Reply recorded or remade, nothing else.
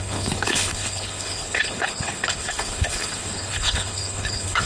remade